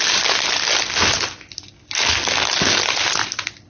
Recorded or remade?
recorded